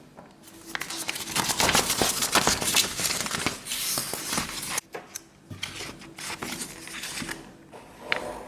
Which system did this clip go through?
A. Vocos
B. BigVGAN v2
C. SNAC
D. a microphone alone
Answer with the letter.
D